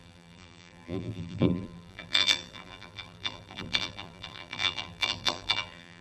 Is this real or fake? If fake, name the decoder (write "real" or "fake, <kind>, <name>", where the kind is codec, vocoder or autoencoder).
fake, vocoder, BigVGAN v2